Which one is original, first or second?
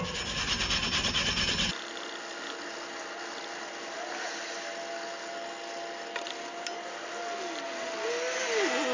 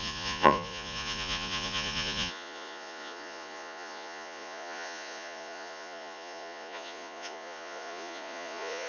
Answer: first